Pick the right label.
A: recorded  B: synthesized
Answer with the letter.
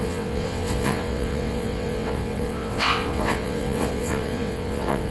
B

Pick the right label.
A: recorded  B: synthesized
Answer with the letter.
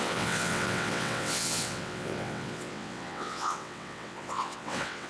B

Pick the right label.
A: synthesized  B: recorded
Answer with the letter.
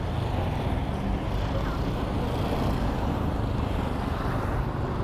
B